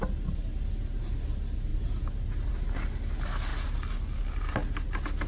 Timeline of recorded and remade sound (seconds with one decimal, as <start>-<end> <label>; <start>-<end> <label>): 0.0-5.3 recorded